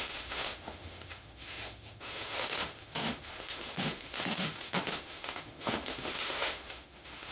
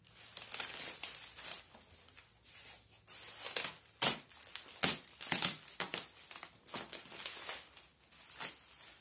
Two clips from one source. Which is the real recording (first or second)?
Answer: second